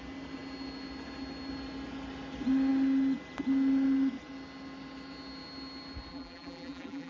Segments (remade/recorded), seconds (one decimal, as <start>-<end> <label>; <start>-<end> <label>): 0.0-6.1 recorded; 6.1-7.1 remade